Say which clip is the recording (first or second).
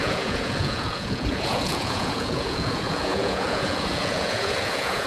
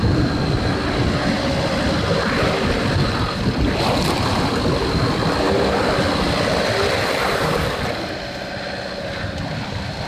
second